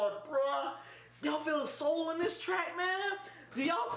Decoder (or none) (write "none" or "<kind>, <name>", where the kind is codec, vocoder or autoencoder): none